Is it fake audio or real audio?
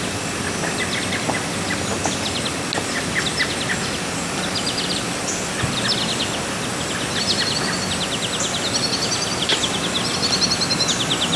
real